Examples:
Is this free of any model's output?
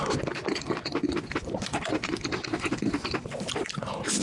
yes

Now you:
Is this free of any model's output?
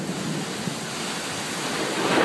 yes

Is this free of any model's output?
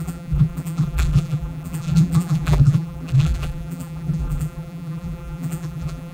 no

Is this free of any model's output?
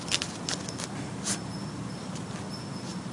yes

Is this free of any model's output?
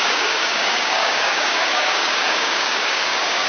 no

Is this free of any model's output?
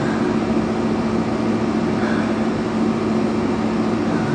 yes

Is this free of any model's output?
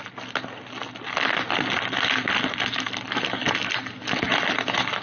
yes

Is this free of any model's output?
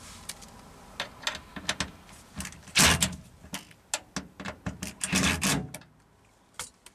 yes